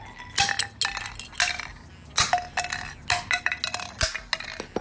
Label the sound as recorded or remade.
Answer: recorded